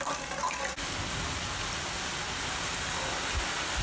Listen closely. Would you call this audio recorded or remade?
recorded